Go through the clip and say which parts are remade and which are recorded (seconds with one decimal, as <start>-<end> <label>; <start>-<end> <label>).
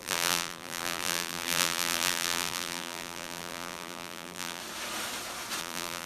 0.0-4.6 remade; 4.6-5.6 recorded; 5.6-6.1 remade